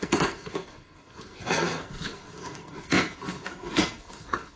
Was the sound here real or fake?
fake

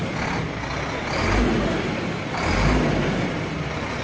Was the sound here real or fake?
real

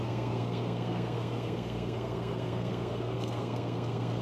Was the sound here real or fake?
fake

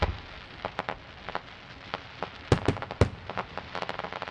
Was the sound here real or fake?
real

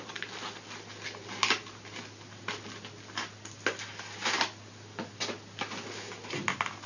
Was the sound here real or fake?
real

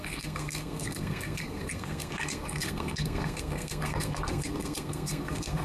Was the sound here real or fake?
fake